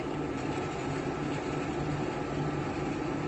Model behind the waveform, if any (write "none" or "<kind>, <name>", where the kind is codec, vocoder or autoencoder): none